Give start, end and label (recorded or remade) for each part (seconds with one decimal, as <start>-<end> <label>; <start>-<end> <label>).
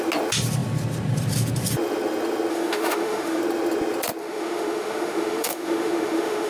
0.0-2.5 recorded; 2.5-3.4 remade; 3.4-4.2 recorded; 4.2-6.5 remade